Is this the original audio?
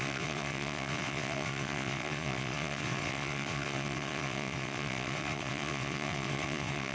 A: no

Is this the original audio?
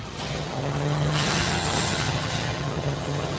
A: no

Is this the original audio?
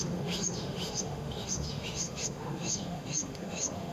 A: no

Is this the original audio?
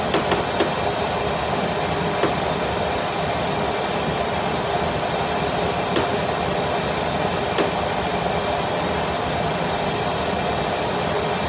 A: yes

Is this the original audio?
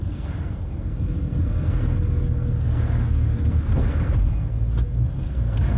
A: no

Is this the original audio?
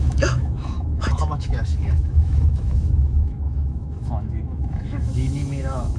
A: no